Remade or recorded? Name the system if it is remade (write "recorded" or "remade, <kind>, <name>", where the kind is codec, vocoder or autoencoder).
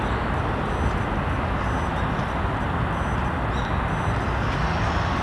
recorded